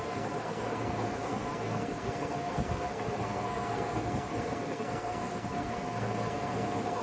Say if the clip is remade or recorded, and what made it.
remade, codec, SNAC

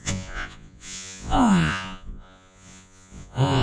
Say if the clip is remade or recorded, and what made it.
remade, vocoder, Vocos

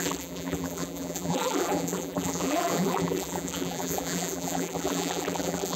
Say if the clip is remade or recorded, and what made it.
remade, vocoder, BigVGAN v2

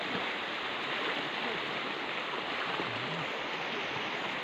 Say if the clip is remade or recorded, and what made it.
recorded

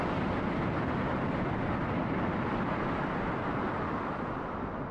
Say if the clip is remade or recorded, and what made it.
recorded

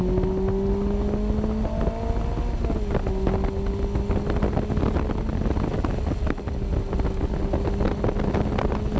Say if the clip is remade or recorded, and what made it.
recorded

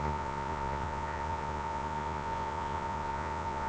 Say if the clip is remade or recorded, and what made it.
remade, vocoder, Vocos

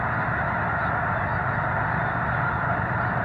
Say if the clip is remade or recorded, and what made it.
recorded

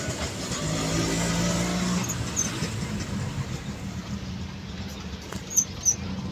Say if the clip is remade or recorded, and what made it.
recorded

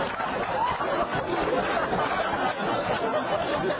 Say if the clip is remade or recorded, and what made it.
recorded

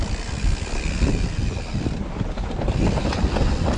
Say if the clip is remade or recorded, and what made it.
recorded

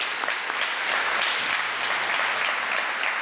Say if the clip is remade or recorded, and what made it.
recorded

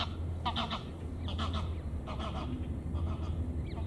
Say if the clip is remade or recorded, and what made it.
recorded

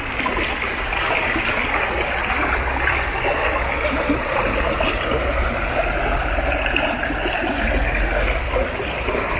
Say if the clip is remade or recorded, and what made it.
recorded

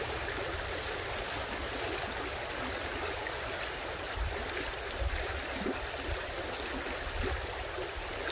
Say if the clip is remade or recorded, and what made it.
recorded